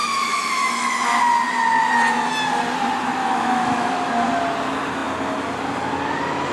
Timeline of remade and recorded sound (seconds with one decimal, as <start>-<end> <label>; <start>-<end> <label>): 0.0-1.2 remade; 1.2-3.2 recorded; 3.2-4.1 remade; 4.1-6.5 recorded